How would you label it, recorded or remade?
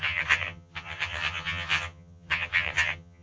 remade